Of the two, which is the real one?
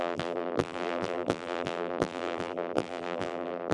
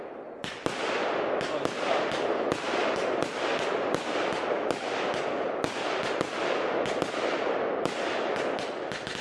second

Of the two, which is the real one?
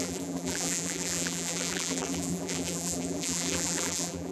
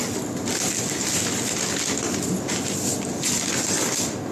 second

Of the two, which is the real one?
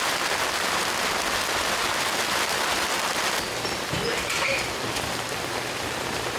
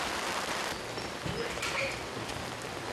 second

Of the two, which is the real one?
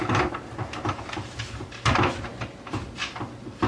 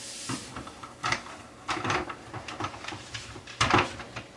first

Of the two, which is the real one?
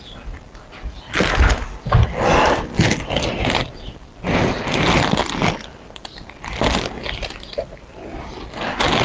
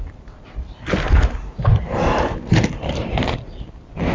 first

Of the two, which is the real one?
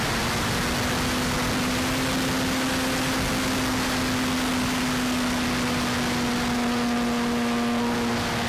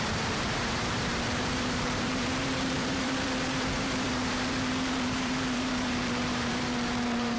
first